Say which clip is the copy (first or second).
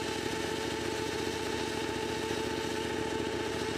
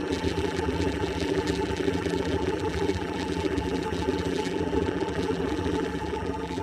second